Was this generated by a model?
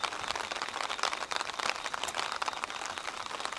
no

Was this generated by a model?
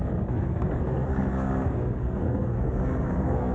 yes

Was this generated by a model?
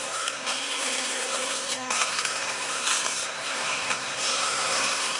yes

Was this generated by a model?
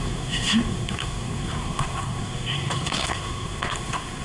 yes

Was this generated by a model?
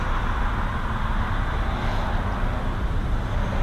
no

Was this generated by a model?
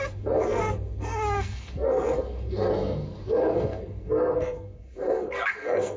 yes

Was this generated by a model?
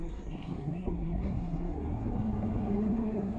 yes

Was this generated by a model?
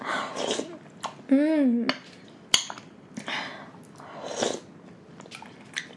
no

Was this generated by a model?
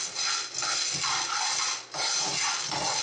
no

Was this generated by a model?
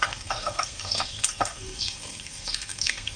yes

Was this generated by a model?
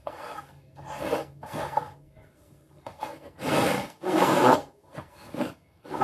yes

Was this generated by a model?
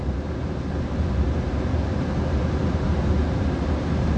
no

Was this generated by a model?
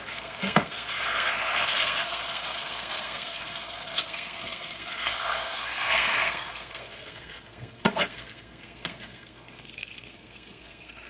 yes